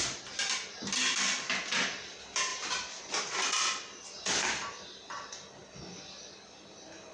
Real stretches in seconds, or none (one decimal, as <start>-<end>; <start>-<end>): 0.0-2.5; 3.1-7.1